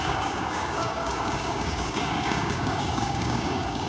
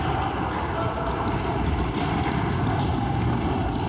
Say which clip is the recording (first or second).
second